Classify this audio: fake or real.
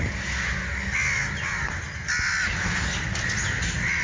real